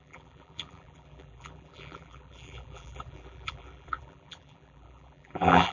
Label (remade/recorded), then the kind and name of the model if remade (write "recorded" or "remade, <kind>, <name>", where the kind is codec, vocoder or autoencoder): remade, vocoder, BigVGAN v2